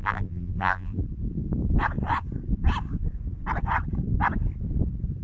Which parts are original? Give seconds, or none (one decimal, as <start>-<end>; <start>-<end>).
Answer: 1.0-5.2